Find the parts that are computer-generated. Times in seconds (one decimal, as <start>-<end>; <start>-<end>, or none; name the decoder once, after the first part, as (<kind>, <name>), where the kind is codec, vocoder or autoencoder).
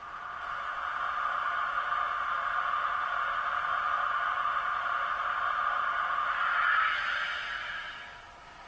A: none